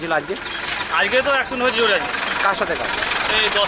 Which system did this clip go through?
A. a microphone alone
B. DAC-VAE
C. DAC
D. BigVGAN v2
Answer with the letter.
A